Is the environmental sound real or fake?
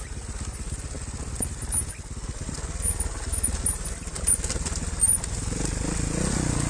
real